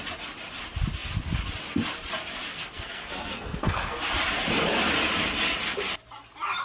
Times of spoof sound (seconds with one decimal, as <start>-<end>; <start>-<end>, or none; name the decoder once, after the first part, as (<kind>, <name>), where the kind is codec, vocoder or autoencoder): 2.5-4.0 (codec, SNAC)